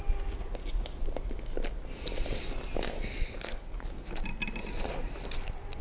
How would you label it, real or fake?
real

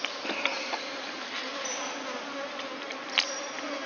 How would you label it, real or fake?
real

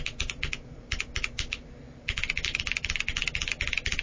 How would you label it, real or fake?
real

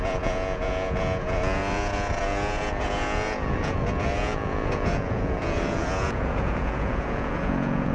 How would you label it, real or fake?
fake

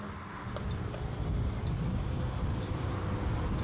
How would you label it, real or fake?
real